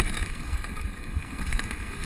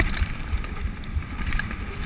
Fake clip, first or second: first